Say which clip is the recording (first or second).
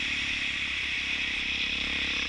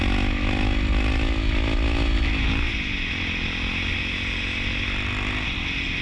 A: second